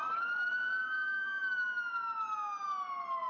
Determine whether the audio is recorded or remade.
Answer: recorded